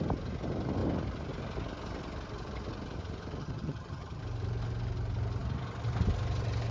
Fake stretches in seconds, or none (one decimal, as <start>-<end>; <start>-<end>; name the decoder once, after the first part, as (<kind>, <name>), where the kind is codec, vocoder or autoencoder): 3.4-4.2 (vocoder, HiFi-GAN)

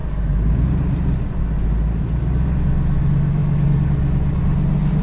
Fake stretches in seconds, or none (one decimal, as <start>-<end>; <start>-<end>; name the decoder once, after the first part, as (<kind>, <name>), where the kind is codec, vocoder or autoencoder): none

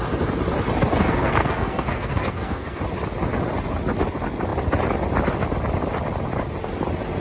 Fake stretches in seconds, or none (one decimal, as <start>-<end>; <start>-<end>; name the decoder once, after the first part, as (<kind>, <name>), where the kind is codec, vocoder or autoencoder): 0.9-2.8 (codec, SNAC)

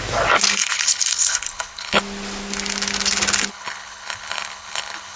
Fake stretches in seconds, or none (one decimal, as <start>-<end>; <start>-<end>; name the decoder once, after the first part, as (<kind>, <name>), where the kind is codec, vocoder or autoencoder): 0.6-2.0 (codec, HILCodec); 3.5-5.2

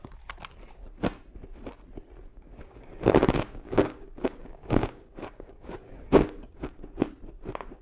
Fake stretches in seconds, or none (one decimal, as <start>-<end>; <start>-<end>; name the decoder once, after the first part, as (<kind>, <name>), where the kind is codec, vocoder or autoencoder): 2.3-7.0 (codec, DAC)